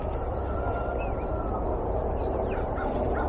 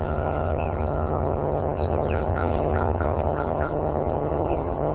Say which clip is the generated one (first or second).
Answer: second